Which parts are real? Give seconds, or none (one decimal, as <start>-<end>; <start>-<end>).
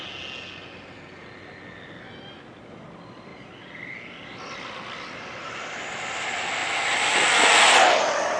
0.0-8.4